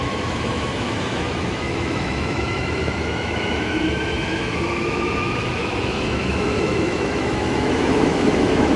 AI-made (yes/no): yes